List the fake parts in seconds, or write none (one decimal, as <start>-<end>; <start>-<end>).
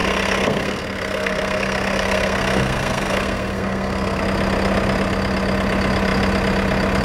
0.0-4.2